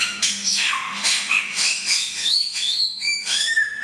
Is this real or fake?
fake